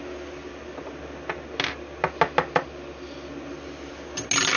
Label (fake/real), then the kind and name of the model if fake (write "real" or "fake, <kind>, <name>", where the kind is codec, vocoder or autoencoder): real